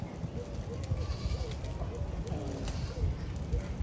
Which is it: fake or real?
real